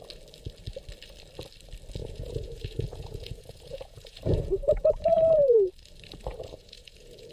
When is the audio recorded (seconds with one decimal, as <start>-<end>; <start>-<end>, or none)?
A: 0.0-2.0; 5.7-6.3